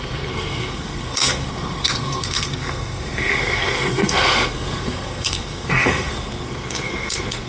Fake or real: fake